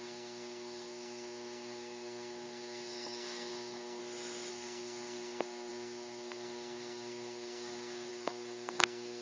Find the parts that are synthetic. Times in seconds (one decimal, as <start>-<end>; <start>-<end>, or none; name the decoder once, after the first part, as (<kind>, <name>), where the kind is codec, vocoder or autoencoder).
0.0-4.0 (codec, SNAC); 4.5-9.2